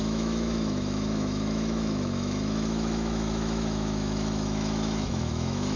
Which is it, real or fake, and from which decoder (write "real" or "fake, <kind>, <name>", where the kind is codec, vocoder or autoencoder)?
fake, autoencoder, DAC-VAE